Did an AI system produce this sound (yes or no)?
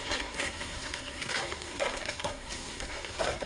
yes